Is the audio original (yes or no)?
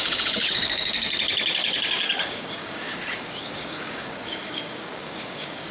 no